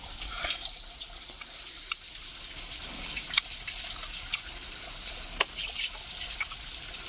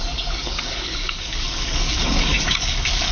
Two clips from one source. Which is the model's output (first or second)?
second